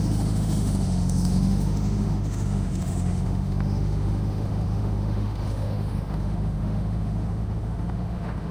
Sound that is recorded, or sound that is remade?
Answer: remade